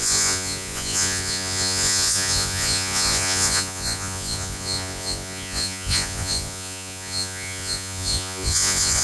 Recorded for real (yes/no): no